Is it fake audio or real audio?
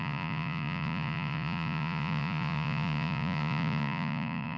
fake